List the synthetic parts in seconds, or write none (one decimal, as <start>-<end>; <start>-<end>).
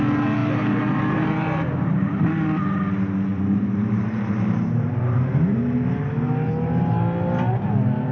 0.4-2.1; 3.3-6.0